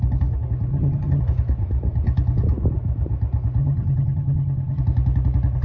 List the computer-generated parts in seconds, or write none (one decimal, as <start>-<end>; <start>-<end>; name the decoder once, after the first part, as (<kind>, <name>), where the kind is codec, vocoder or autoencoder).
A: 0.7-1.2 (vocoder, HiFi-GAN); 3.6-4.8